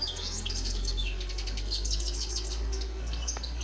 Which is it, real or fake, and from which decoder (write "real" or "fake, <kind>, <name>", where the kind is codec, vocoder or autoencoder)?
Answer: fake, codec, SNAC